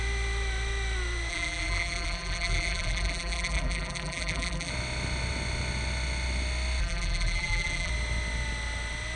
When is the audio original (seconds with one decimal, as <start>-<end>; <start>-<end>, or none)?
0.0-1.3; 4.7-6.8; 7.9-9.2